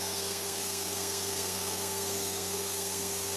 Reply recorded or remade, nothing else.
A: remade